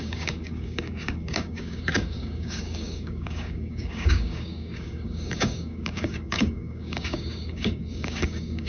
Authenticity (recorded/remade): remade